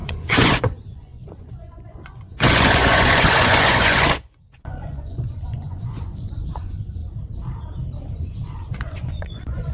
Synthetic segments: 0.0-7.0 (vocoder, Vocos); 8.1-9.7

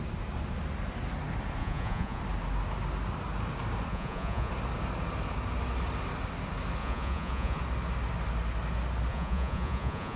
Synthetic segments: 1.6-2.2 (vocoder, Vocos); 3.9-4.5; 6.8-7.6; 9.1-10.2

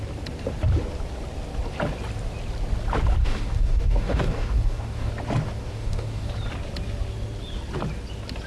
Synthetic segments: 3.2-5.1 (codec, DAC); 5.6-6.3

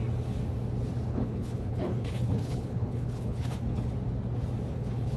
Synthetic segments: 1.1-3.9 (codec, HILCodec); 4.7-5.2

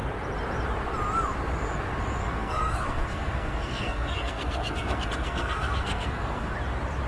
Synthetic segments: 2.2-6.5 (codec, SNAC)

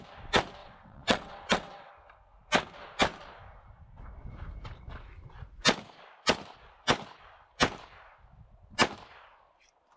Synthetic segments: 0.6-1.9 (vocoder, WaveNeXt)

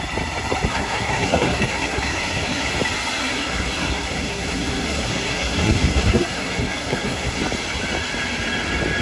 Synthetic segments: 0.7-2.7 (codec, SNAC); 3.2-7.4